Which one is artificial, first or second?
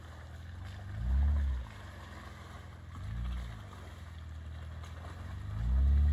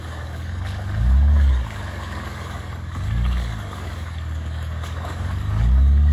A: second